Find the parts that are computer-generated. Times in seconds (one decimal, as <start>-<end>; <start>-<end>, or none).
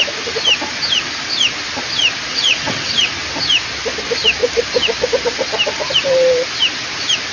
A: 2.3-3.1